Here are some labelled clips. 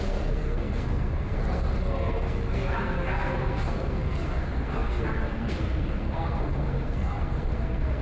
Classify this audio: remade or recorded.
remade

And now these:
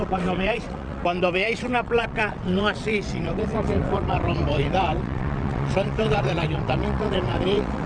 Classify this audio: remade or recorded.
remade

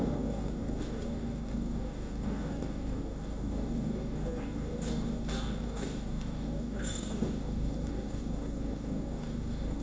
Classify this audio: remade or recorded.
remade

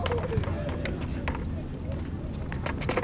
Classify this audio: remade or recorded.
recorded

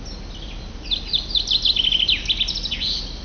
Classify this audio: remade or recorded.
remade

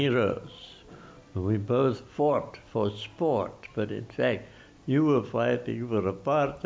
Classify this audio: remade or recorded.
recorded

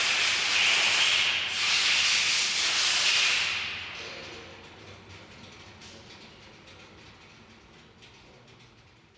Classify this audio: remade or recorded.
recorded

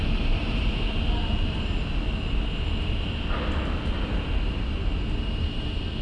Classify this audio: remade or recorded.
recorded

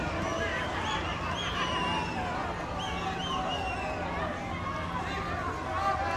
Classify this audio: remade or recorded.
recorded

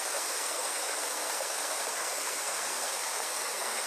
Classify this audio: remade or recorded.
remade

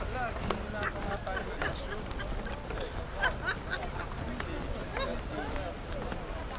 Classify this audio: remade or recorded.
recorded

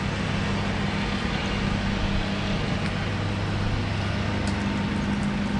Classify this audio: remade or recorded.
recorded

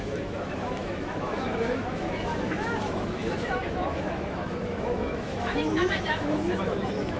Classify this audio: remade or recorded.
remade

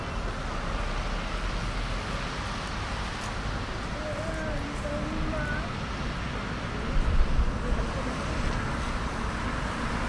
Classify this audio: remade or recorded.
recorded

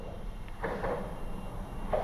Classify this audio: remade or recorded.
recorded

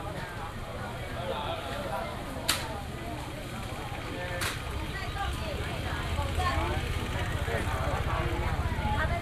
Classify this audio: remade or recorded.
recorded